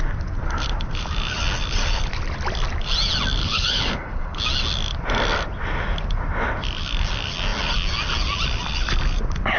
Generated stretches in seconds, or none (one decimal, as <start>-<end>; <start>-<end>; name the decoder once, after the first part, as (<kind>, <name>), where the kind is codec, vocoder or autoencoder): 3.4-4.4 (codec, HILCodec)